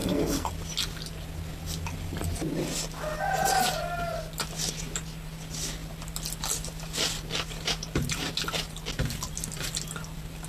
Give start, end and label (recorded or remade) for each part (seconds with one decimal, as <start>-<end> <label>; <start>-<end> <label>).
0.0-0.5 remade; 0.5-10.5 recorded